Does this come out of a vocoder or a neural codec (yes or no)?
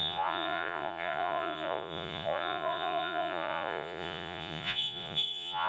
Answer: yes